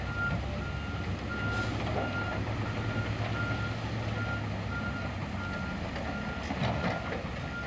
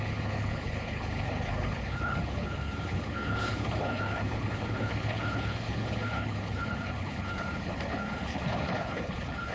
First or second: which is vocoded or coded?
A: second